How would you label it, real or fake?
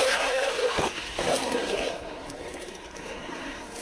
fake